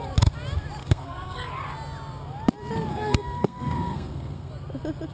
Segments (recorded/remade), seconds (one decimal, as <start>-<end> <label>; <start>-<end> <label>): 0.0-0.8 recorded; 0.8-1.5 remade; 1.5-2.9 recorded; 2.9-4.5 remade; 4.5-5.1 recorded